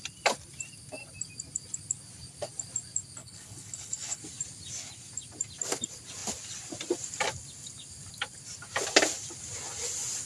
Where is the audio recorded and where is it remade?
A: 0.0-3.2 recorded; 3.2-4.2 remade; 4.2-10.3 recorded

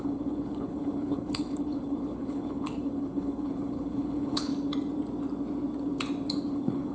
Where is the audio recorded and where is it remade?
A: 0.0-4.5 remade; 4.5-6.5 recorded; 6.5-6.9 remade

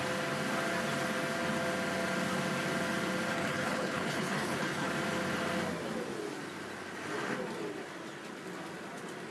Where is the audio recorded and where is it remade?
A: 0.0-3.3 recorded; 3.3-4.9 remade; 4.9-9.3 recorded

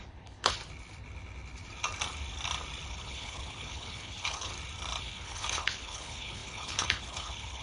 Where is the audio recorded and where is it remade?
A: 0.0-0.6 remade; 0.6-2.9 recorded; 2.9-4.5 remade; 4.5-5.0 recorded; 5.0-7.6 remade

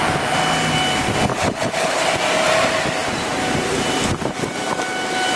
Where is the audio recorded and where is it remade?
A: 0.0-1.3 recorded; 1.3-2.0 remade; 2.0-5.4 recorded